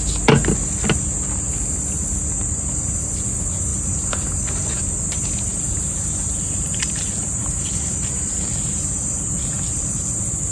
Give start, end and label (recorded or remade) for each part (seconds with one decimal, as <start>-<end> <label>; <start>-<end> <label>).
0.0-3.7 recorded; 3.7-4.4 remade; 4.4-5.5 recorded; 5.5-10.1 remade; 10.1-10.5 recorded